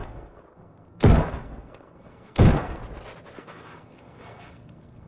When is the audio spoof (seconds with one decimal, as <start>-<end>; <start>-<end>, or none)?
0.0-2.8; 3.4-5.1